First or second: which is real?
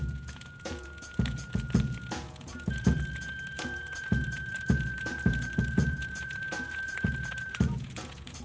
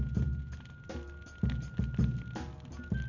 second